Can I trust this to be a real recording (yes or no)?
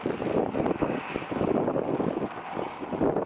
yes